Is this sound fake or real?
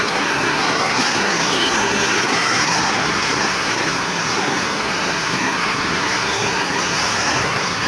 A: fake